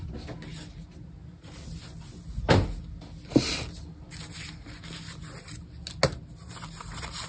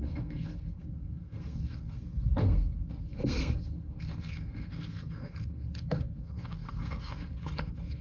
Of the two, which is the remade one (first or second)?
second